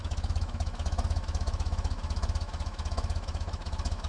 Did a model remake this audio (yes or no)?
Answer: yes